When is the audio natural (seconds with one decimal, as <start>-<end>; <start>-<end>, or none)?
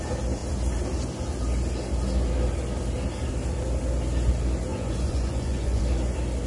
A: 0.0-4.7; 5.8-6.5